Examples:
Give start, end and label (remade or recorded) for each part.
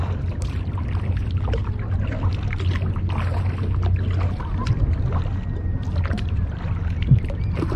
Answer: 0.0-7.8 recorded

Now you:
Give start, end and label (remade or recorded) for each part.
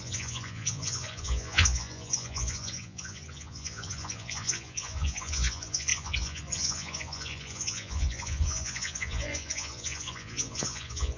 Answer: 0.0-11.2 remade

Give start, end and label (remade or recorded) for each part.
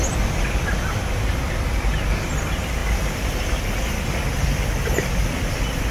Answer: 0.0-5.9 recorded